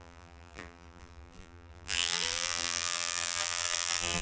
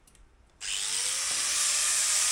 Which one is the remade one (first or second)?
first